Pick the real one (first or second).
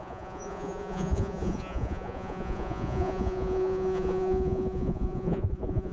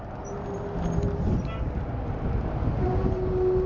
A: second